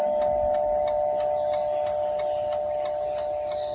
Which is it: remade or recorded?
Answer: recorded